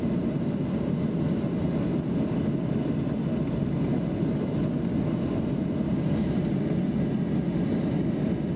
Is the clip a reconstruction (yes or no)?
no